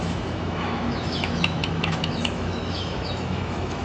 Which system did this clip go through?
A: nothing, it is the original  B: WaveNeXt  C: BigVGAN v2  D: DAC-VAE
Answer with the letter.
D